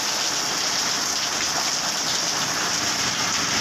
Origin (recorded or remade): recorded